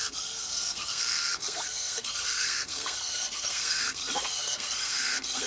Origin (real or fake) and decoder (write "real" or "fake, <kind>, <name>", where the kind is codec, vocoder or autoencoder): fake, codec, SNAC